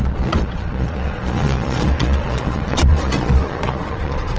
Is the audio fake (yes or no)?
yes